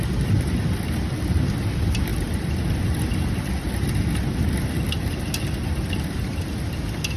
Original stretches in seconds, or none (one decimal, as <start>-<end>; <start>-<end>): 0.0-2.1; 2.8-7.2